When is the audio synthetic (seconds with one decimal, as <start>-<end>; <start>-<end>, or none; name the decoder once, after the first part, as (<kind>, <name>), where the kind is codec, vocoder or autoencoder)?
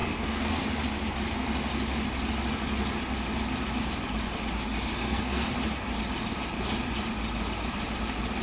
0.0-0.5 (codec, SNAC); 5.0-5.5